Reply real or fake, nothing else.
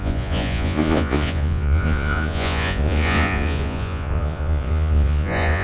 fake